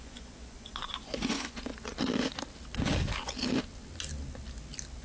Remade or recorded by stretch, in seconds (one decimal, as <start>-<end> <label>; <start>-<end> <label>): 0.0-1.7 remade; 1.7-5.0 recorded